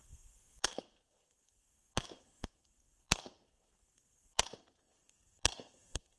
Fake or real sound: fake